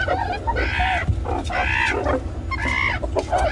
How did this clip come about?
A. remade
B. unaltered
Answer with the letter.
B